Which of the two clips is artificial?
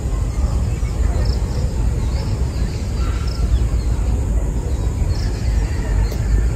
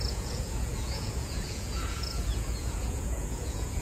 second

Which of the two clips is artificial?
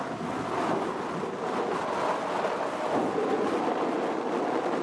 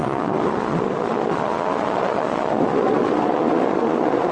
second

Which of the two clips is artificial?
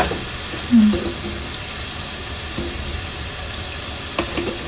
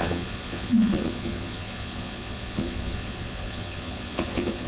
second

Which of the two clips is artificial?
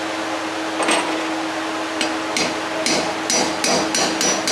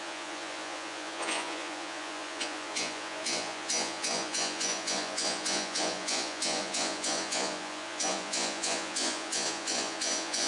second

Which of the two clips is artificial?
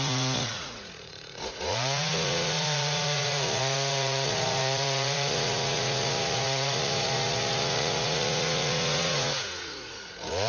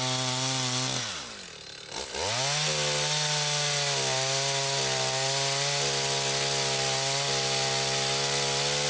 first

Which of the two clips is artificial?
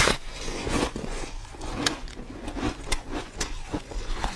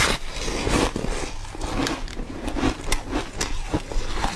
first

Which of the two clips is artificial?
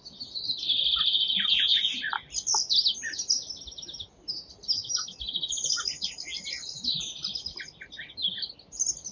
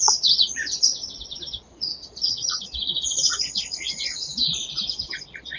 second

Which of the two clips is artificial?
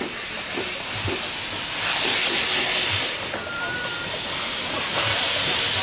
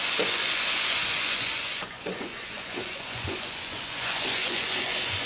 second